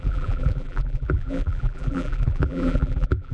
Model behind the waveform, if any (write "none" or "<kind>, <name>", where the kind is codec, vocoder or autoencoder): vocoder, BigVGAN v2